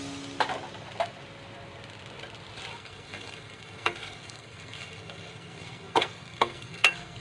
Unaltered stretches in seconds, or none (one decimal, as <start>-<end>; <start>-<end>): 0.0-2.7